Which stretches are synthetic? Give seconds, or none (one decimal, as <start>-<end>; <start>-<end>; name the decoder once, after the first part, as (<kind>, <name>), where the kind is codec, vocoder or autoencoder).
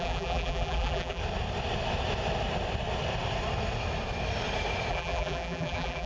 0.0-1.2 (vocoder, BigVGAN v2); 4.9-6.1